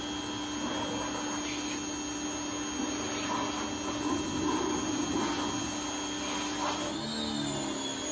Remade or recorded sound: recorded